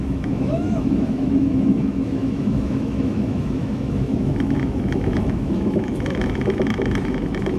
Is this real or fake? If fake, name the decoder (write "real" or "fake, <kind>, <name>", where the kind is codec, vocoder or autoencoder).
fake, autoencoder, DAC-VAE